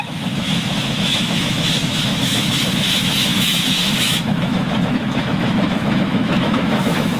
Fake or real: fake